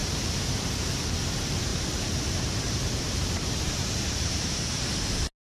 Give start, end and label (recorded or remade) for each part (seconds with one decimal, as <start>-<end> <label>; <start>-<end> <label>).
0.0-0.7 remade; 0.7-1.7 recorded; 1.7-5.0 remade; 5.0-5.5 recorded